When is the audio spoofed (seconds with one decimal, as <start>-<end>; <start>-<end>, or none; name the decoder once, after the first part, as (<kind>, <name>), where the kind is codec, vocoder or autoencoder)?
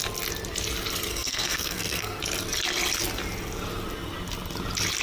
1.1-2.2 (codec, SNAC)